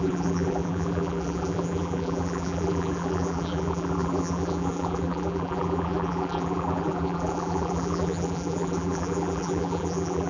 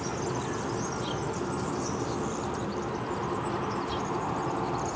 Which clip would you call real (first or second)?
second